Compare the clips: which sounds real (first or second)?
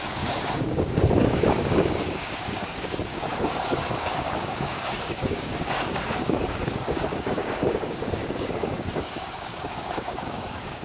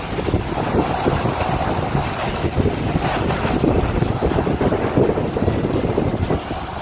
second